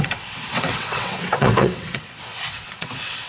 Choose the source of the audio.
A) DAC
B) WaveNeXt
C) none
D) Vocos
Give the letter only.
B